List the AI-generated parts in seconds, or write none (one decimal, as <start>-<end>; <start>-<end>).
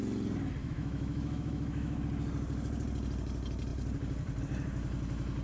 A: 0.6-2.0